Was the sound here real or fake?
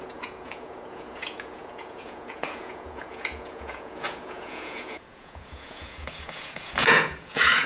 fake